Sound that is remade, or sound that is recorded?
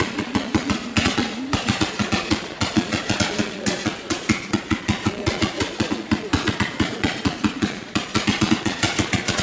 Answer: remade